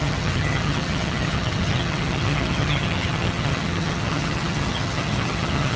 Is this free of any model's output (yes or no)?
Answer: no